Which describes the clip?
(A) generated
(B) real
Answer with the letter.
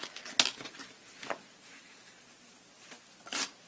B